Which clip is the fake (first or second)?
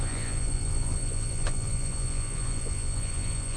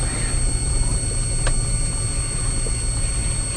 first